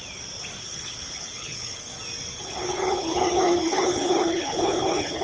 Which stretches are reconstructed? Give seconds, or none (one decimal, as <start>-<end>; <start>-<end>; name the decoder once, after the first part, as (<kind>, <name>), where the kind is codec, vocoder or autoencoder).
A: 0.6-1.9 (codec, HILCodec); 2.4-5.2